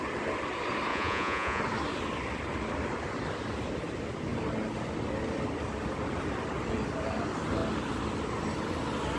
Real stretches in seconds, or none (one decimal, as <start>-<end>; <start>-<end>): 0.0-0.9; 1.6-9.2